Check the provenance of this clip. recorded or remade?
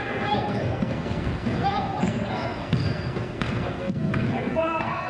remade